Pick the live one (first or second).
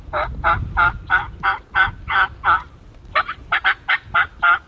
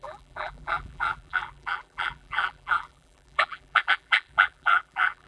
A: first